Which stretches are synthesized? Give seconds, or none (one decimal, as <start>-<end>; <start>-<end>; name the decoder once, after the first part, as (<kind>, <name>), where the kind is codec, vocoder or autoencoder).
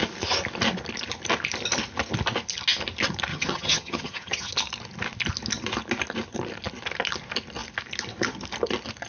3.3-4.5 (vocoder, HiFi-GAN)